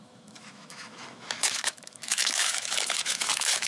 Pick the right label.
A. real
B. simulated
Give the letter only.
B